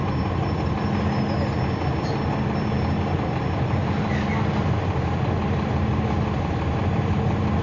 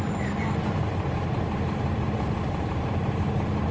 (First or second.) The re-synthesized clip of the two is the second